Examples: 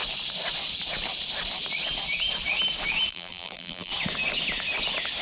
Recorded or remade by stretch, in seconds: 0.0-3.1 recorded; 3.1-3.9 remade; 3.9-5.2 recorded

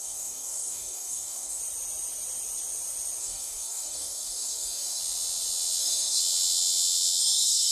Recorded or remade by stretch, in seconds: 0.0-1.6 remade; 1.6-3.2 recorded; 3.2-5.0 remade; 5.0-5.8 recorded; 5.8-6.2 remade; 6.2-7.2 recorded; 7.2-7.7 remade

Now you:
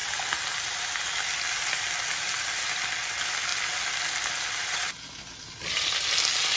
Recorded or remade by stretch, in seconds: 0.0-6.6 recorded

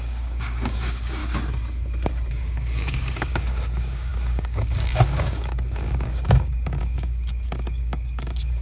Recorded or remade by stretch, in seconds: 0.0-1.2 remade; 1.2-2.3 recorded; 2.3-8.6 remade

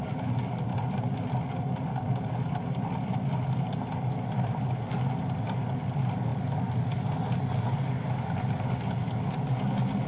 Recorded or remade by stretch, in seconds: 0.0-10.1 recorded

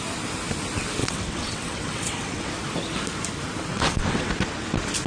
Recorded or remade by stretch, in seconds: 0.0-1.0 recorded; 1.0-2.5 remade; 2.5-3.7 recorded; 3.7-4.3 remade; 4.3-5.1 recorded

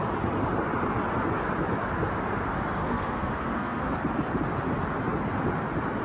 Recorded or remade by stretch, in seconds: 0.0-2.8 recorded; 2.8-3.8 remade; 3.8-6.0 recorded